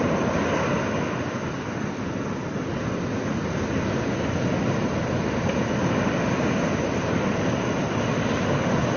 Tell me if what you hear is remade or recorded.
recorded